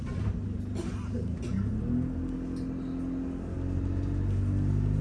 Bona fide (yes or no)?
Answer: yes